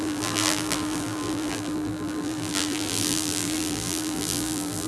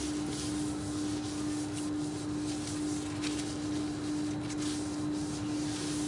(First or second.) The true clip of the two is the second